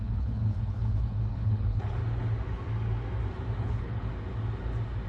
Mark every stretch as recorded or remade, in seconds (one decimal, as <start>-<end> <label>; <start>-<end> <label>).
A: 0.0-2.0 remade; 2.0-3.6 recorded; 3.6-4.1 remade; 4.1-5.1 recorded